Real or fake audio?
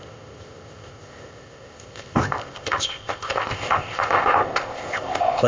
fake